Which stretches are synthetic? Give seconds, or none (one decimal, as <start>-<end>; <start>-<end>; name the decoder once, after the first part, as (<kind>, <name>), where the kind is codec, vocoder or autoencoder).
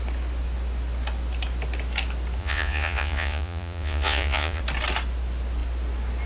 2.4-4.6 (vocoder, Vocos)